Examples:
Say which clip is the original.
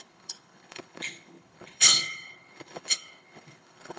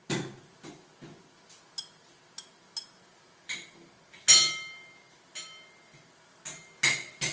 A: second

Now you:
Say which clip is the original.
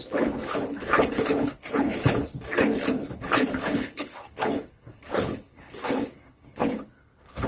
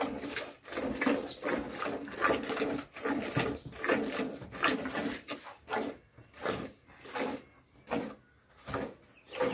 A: second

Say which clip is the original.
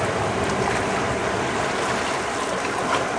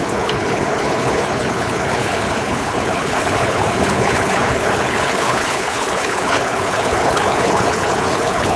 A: first